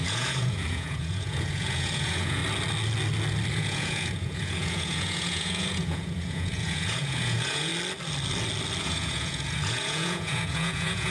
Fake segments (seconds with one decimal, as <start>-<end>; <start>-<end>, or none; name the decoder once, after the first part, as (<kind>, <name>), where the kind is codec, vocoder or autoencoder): 0.0-2.4 (vocoder, Vocos); 3.5-7.7; 8.8-11.1